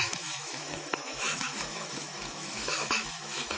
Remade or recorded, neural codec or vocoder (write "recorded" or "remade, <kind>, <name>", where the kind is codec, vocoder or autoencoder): remade, autoencoder, DAC-VAE